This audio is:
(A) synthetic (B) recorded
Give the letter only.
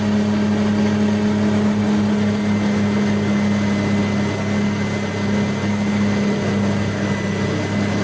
B